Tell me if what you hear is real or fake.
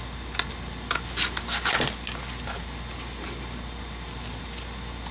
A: real